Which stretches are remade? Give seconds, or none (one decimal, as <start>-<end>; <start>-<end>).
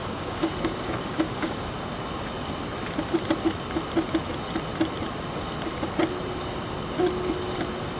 0.0-1.6